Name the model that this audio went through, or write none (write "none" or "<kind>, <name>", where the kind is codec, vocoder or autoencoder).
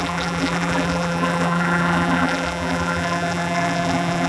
vocoder, BigVGAN v2